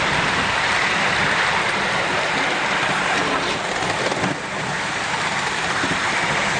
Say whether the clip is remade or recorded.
recorded